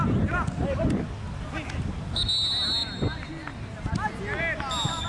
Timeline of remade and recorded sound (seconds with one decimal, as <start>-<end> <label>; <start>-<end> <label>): 0.0-5.1 recorded